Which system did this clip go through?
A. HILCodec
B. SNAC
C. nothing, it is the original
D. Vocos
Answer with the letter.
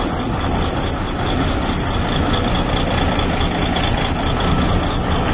C